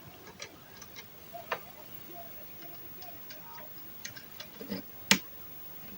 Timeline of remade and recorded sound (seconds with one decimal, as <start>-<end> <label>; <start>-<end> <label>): 0.0-1.2 recorded; 1.2-2.1 remade; 2.1-4.0 recorded; 4.0-4.8 remade; 4.8-6.0 recorded